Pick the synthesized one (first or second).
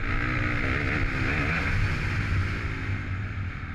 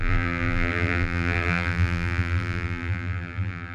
second